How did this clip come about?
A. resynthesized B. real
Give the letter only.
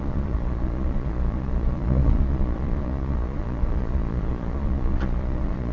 A